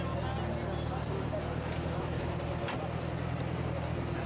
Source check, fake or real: real